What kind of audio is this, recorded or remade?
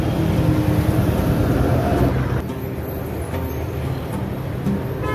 recorded